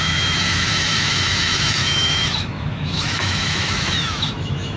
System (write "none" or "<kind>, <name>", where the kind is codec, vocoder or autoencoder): autoencoder, DAC-VAE